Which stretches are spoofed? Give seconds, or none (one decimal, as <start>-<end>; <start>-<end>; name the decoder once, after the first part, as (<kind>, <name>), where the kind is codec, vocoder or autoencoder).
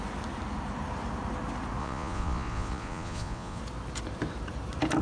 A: 1.8-3.6 (vocoder, Vocos)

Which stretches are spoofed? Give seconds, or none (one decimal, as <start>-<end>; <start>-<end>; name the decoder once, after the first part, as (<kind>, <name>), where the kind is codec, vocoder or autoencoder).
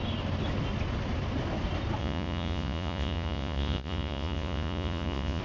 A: 2.0-5.4 (vocoder, Vocos)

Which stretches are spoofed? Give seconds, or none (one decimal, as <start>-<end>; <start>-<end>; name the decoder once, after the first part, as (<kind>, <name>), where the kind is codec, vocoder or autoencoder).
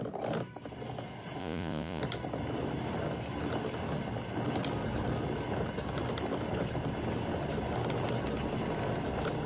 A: 1.4-2.0 (vocoder, Vocos)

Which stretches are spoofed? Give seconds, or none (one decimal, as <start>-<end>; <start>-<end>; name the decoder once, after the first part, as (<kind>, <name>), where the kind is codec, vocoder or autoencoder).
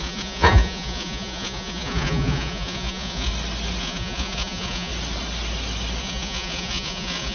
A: 0.0-3.3 (vocoder, Vocos); 3.8-4.9; 6.0-7.3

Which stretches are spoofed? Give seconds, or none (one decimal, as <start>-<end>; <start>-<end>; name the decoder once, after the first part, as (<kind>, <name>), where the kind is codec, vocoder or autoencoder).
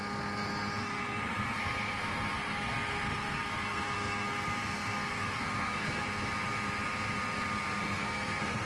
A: 0.8-6.0 (codec, SNAC); 7.8-8.7